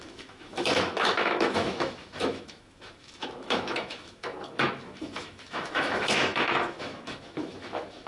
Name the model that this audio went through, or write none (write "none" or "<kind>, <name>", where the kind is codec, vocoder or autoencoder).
autoencoder, DAC-VAE